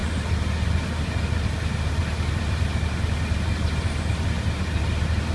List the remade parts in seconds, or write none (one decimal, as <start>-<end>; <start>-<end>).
none